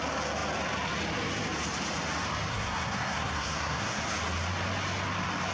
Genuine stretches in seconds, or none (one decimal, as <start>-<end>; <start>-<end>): 0.0-2.5; 4.0-5.5